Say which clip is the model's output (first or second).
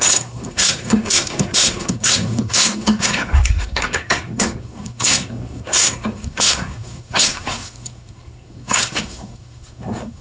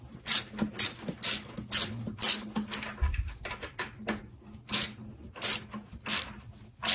first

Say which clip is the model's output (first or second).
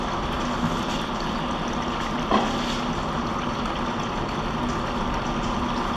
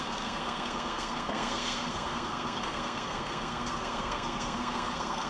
second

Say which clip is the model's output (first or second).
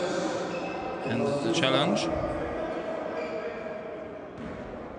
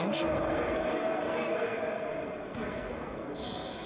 second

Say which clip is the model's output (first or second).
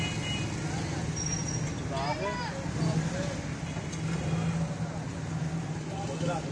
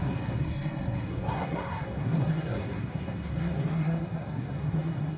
second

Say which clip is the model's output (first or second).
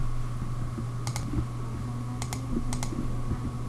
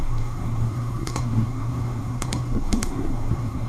second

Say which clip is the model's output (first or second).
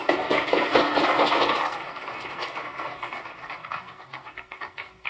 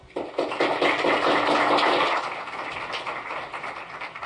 first